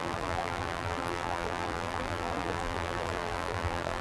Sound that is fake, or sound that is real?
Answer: fake